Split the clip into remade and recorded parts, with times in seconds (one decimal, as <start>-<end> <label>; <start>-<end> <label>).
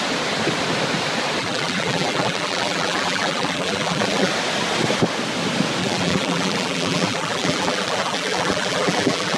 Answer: 0.0-1.4 recorded; 1.4-4.3 remade; 4.3-5.8 recorded; 5.8-9.4 remade